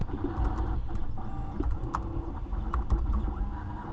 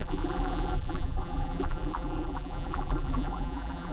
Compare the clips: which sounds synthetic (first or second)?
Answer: second